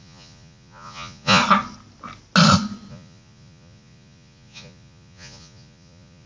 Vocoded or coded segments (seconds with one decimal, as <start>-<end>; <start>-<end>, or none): 0.0-1.4; 2.9-6.3